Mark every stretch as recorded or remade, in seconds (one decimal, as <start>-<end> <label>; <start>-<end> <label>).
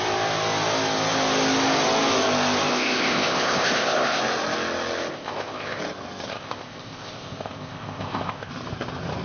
0.0-2.7 recorded; 2.7-4.2 remade; 4.2-5.1 recorded; 5.1-5.8 remade; 5.8-6.3 recorded; 6.3-8.5 remade; 8.5-9.2 recorded